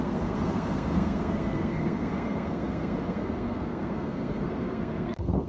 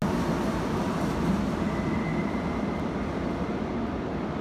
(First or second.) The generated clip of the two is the first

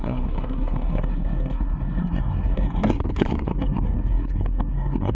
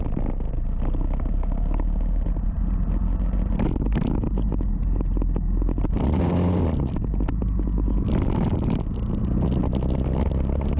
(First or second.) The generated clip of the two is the first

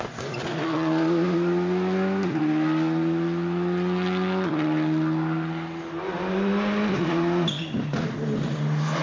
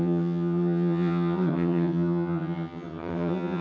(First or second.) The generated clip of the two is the second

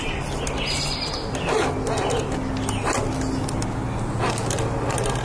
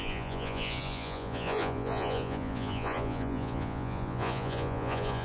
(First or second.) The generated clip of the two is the second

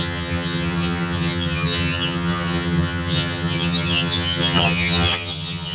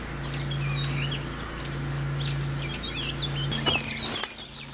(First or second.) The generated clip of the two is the first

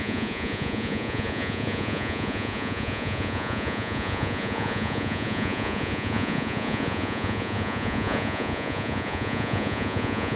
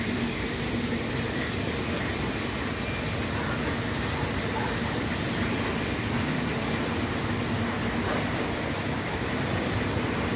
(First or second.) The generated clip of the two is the first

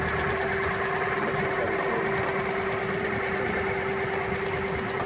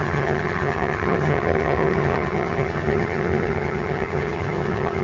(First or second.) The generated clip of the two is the second